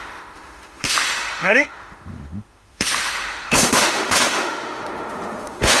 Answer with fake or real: fake